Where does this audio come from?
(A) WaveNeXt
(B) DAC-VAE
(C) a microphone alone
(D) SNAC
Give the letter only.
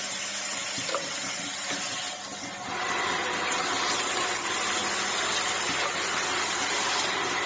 C